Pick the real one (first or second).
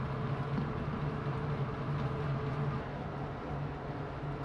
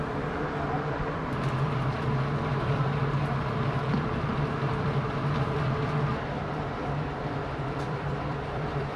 first